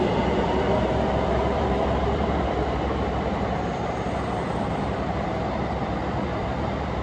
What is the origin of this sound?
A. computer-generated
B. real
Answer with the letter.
A